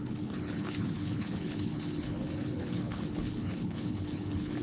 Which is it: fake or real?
fake